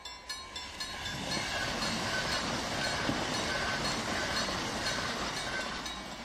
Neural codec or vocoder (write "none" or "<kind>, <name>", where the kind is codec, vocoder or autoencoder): none